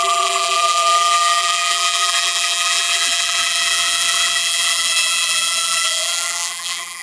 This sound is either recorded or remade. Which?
remade